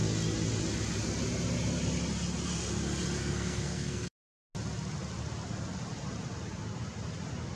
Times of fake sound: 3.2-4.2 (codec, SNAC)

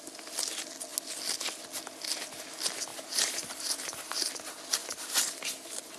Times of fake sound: 2.9-4.3 (vocoder, BigVGAN v2); 4.8-6.0

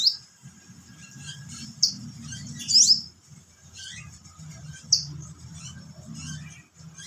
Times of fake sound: 0.6-1.9 (vocoder, BigVGAN v2); 3.4-5.6

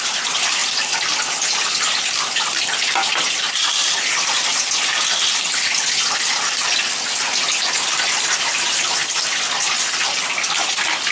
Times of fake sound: none